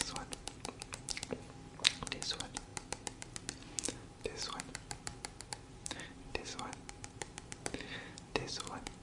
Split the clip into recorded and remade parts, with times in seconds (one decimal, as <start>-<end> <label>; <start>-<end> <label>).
0.0-2.7 remade; 2.7-4.2 recorded; 4.2-5.1 remade; 5.1-5.7 recorded; 5.7-9.0 remade